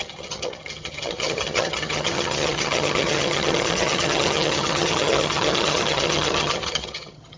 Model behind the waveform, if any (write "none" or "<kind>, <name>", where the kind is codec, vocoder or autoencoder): vocoder, HiFi-GAN